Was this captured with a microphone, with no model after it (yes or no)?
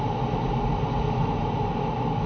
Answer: yes